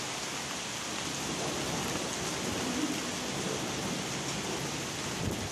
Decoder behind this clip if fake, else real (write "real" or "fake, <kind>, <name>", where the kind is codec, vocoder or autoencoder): real